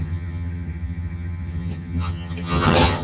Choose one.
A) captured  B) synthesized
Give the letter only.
B